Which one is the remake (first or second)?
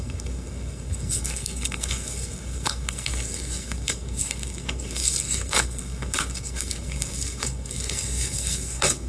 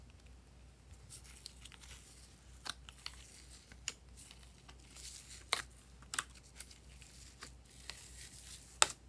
first